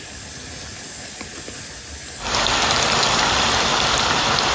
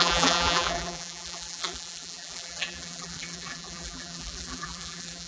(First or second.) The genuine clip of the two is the first